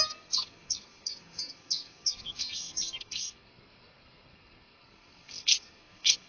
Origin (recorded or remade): remade